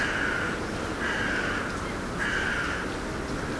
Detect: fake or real real